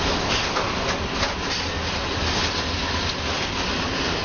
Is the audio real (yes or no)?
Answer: yes